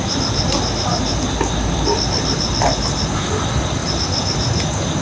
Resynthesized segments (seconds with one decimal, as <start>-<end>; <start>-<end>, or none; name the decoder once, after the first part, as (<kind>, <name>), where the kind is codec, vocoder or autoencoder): none